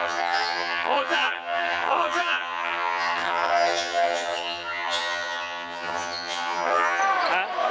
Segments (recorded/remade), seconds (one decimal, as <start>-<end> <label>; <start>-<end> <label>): 0.0-7.0 remade; 7.0-7.7 recorded